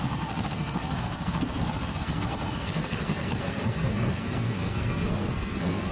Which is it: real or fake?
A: fake